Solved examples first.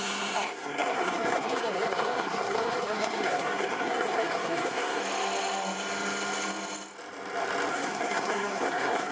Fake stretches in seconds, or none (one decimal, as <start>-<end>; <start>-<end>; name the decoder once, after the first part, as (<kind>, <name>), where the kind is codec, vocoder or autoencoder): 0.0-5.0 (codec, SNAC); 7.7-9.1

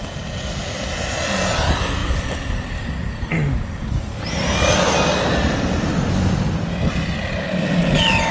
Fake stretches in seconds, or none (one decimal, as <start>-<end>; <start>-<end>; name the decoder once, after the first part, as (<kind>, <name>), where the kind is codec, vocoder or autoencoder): none

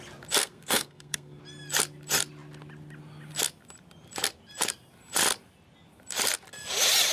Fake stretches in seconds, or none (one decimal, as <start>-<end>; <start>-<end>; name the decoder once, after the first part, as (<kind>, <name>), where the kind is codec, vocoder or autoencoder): 0.4-1.4 (codec, SNAC)